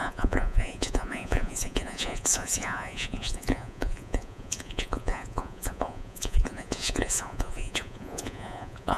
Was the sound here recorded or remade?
remade